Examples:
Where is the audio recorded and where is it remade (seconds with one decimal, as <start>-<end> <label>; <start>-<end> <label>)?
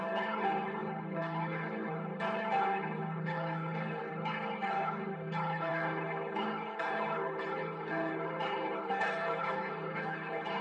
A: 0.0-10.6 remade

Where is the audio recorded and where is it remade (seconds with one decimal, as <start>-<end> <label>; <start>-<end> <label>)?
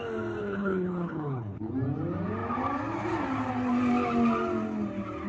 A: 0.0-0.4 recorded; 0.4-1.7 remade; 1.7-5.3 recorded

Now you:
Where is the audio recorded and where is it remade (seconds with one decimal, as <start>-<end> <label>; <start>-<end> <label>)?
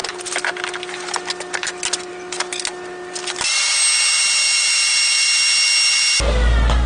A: 0.0-6.9 recorded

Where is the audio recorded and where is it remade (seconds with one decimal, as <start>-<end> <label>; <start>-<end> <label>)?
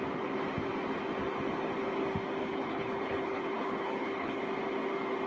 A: 0.0-2.4 recorded; 2.4-4.4 remade; 4.4-5.3 recorded